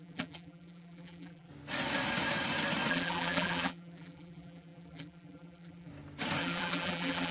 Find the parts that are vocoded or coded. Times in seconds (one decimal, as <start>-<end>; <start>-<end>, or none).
0.0-1.5; 2.9-5.9; 6.4-7.3

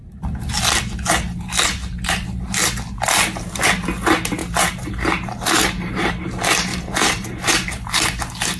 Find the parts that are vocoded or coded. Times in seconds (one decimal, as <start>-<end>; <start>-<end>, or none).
4.4-6.1; 6.7-7.5